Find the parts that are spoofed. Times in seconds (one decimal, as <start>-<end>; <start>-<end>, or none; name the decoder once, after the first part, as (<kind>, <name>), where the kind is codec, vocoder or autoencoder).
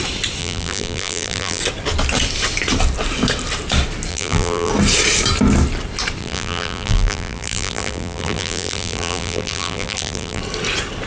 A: 0.4-1.6 (vocoder, BigVGAN v2); 4.1-4.7; 6.2-10.4